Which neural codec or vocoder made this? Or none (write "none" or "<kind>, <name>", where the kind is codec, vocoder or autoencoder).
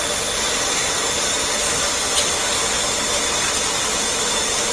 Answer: none